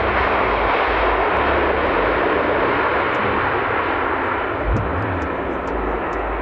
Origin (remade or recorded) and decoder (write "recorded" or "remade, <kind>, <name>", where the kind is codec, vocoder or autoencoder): recorded